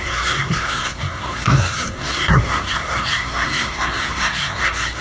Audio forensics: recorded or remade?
remade